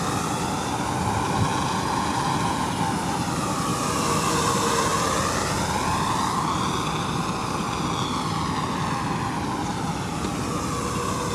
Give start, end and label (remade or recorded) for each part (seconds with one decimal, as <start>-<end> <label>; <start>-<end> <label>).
0.0-1.5 recorded; 1.5-2.7 remade; 2.7-11.3 recorded